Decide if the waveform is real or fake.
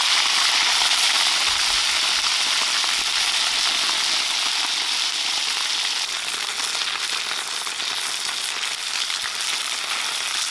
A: real